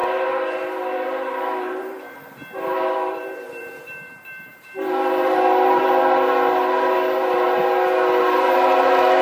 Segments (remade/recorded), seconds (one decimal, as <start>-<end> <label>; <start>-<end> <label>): 0.0-7.6 remade; 7.6-8.2 recorded; 8.2-9.2 remade